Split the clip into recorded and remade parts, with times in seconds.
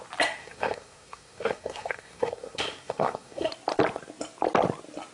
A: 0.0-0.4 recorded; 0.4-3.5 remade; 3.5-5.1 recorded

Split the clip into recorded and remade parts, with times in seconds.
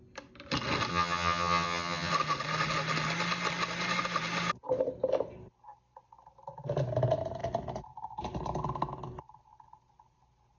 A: 0.0-0.9 recorded; 0.9-2.1 remade; 2.1-10.6 recorded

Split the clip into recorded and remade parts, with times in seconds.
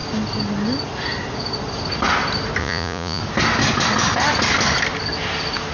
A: 0.0-2.6 recorded; 2.6-3.2 remade; 3.2-5.7 recorded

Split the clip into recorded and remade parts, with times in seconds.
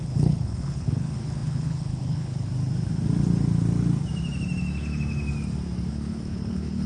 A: 0.0-2.5 remade; 2.5-5.9 recorded; 5.9-6.9 remade